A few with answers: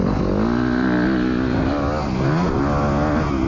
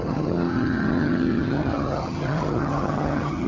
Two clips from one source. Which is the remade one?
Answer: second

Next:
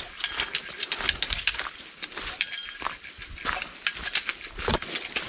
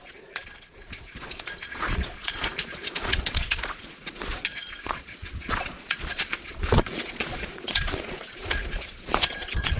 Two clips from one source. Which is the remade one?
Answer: second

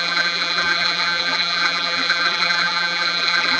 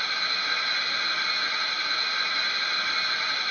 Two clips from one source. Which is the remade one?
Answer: first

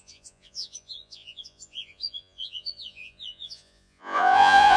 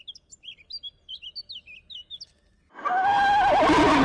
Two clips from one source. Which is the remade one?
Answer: first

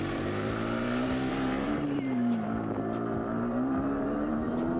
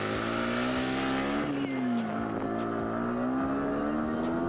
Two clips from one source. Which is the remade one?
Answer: first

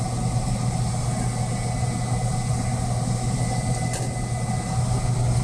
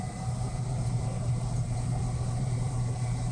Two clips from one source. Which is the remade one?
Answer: second